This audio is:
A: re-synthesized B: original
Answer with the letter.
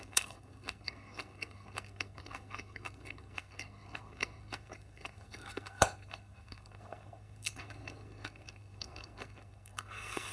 A